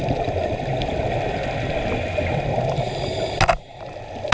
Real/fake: real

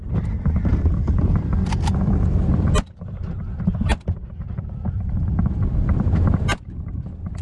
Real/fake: fake